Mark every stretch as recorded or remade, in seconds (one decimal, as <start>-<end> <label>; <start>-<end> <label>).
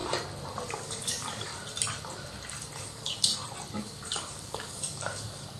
0.0-0.7 recorded; 0.7-1.5 remade; 1.5-2.8 recorded; 2.8-3.3 remade; 3.3-3.8 recorded; 3.8-5.6 remade